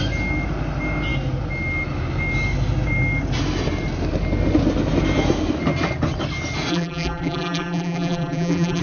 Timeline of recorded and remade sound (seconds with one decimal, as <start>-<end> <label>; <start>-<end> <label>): 0.0-6.7 recorded; 6.7-8.8 remade